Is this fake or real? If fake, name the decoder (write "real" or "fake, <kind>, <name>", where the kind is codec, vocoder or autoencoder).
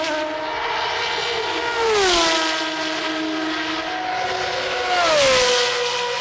real